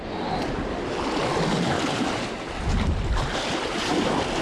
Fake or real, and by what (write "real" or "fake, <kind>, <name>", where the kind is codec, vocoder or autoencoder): real